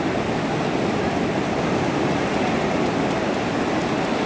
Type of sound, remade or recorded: recorded